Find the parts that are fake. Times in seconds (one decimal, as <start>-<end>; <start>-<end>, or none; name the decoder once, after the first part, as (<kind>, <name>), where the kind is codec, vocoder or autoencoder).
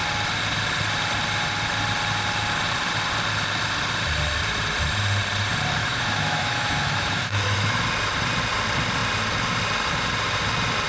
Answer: 5.8-7.8 (autoencoder, DAC-VAE)